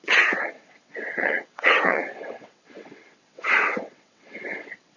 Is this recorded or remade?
remade